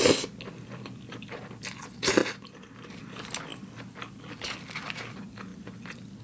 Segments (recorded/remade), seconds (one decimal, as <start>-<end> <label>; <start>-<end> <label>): 0.0-6.2 recorded